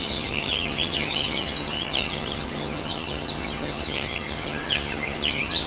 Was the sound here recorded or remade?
remade